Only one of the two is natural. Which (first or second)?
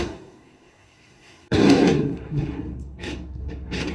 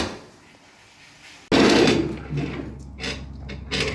second